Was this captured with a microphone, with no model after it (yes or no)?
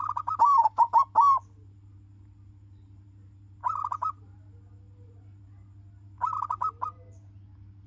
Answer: yes